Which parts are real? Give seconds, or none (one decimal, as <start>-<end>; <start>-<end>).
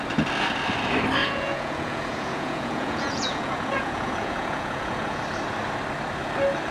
0.0-1.2; 5.2-6.7